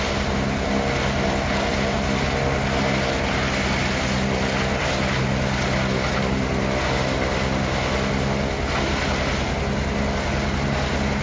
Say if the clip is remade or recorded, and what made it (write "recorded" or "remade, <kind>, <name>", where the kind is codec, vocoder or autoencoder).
recorded